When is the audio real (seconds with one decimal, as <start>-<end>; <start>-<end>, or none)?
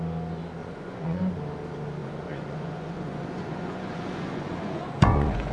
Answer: 0.0-0.6; 1.2-2.0